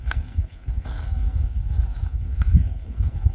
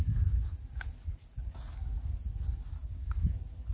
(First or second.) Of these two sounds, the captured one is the second